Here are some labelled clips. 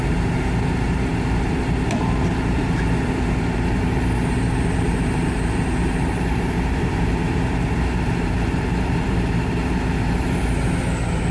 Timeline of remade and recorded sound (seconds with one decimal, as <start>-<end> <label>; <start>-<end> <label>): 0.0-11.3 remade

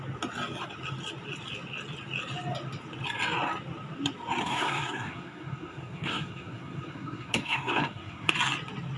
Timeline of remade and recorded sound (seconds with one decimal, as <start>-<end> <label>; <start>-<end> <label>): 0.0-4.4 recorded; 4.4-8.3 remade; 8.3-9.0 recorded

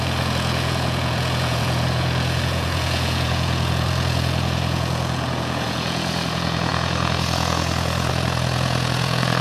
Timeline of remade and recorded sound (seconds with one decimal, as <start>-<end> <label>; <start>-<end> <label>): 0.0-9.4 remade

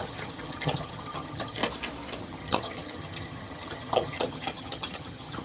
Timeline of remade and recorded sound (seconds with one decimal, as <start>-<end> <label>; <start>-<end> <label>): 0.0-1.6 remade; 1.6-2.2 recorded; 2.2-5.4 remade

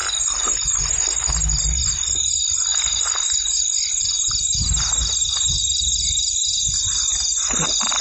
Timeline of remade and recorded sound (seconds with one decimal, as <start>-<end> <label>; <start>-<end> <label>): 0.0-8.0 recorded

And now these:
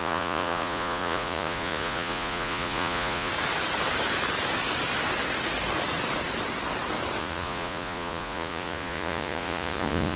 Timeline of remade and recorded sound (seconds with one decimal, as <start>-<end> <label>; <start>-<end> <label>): 0.0-3.3 remade; 3.3-7.2 recorded; 7.2-10.2 remade

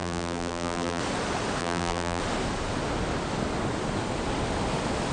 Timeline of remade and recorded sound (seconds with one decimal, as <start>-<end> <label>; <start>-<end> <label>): 0.0-1.0 remade; 1.0-1.6 recorded; 1.6-2.2 remade; 2.2-5.1 recorded